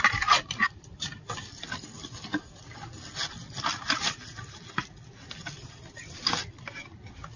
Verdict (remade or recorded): recorded